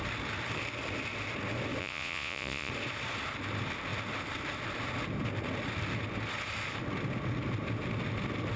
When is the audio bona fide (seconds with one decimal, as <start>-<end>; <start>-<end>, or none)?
0.0-1.8; 2.7-8.6